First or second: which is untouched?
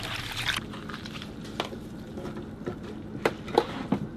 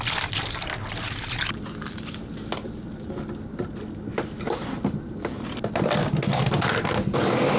first